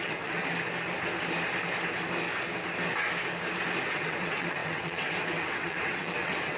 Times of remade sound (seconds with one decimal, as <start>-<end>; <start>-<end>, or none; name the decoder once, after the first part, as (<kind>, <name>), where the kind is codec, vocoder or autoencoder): 0.0-0.4 (vocoder, WaveNeXt); 3.9-6.6